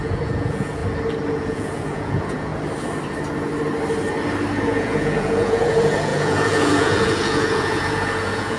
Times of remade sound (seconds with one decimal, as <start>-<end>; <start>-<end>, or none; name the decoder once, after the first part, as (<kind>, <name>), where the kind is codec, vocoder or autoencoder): 0.0-0.8 (vocoder, Vocos); 1.3-2.5; 4.6-8.6